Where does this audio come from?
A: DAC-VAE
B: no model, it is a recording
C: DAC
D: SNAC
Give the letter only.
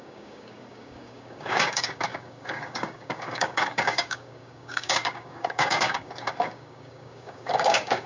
C